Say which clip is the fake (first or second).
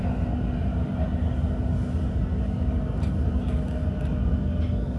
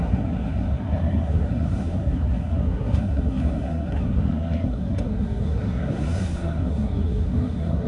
second